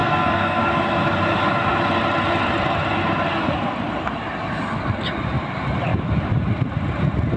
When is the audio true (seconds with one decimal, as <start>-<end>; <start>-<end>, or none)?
0.6-7.4